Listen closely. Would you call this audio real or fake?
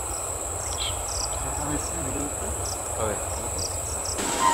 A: fake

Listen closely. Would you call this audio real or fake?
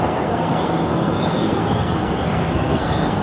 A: fake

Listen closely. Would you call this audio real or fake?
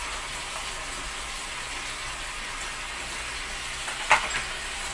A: real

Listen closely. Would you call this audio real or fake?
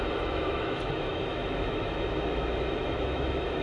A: fake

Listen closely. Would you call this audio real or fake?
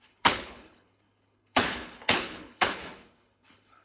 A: fake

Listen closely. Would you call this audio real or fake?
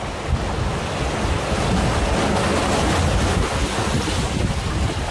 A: real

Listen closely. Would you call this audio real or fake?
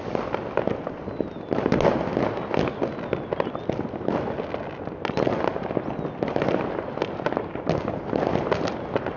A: real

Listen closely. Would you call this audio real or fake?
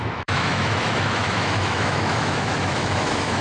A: fake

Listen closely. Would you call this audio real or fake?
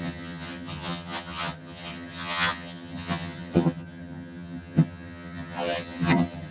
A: fake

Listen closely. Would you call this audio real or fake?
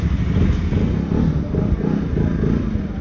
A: real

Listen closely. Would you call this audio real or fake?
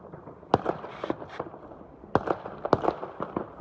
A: real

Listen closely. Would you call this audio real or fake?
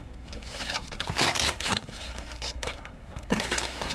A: fake